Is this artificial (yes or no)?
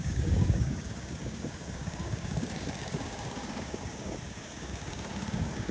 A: yes